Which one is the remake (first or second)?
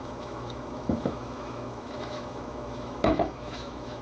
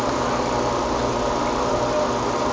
first